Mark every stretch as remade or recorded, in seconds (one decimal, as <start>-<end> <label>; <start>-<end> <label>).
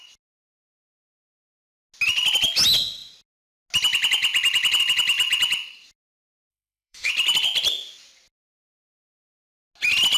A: 0.0-6.5 recorded; 6.5-7.1 remade; 7.1-10.2 recorded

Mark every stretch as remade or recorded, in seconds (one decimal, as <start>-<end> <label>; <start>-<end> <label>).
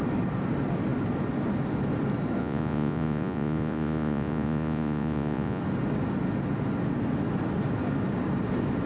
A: 0.0-2.4 recorded; 2.4-5.6 remade; 5.6-8.9 recorded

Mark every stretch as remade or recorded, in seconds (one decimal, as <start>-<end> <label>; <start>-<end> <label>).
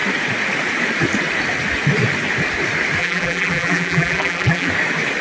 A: 0.0-3.0 recorded; 3.0-4.7 remade; 4.7-5.2 recorded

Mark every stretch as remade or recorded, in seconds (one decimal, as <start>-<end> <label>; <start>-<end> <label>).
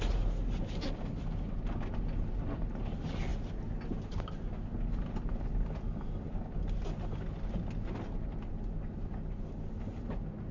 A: 0.0-10.5 recorded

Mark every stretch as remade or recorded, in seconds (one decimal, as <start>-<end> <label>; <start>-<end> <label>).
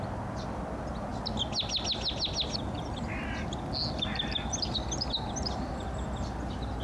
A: 0.0-6.8 recorded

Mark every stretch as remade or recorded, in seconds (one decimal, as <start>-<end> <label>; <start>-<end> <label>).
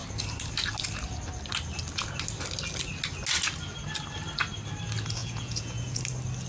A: 0.0-5.2 recorded; 5.2-6.0 remade; 6.0-6.5 recorded